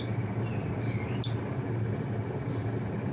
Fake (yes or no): no